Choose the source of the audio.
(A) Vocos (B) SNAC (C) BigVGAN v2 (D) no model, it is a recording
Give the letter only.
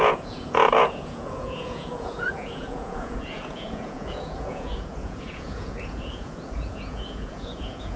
A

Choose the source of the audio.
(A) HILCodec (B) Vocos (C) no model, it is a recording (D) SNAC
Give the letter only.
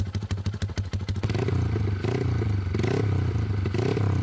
C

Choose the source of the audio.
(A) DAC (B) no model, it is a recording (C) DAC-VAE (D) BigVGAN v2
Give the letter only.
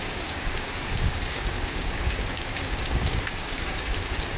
A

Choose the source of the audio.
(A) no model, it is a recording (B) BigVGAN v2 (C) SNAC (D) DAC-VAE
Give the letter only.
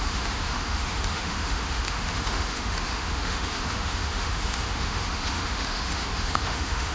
D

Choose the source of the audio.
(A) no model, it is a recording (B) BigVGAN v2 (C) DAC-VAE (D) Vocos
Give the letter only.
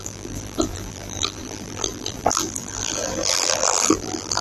B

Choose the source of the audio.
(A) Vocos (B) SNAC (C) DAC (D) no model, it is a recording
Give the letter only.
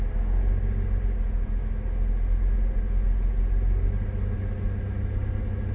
D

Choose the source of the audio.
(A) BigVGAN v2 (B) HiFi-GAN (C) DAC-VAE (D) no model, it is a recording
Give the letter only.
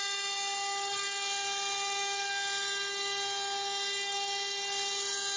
D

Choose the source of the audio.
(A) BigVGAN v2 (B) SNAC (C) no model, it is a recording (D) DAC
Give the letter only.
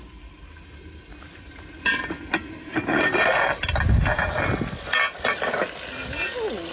C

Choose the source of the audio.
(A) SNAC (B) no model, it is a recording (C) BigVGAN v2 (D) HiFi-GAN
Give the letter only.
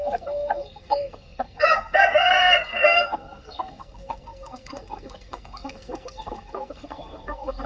A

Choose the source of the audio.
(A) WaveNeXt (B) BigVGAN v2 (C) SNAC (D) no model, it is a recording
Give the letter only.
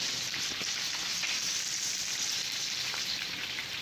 B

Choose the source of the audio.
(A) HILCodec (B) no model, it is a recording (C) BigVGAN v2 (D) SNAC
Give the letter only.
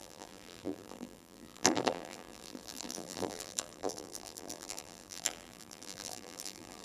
C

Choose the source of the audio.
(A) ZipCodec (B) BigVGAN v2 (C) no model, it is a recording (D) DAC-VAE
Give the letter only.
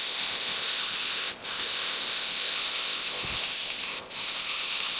A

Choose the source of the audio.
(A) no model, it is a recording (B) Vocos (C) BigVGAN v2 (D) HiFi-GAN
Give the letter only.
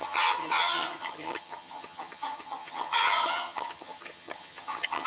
D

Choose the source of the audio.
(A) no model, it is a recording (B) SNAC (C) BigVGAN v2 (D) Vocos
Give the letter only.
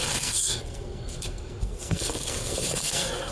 B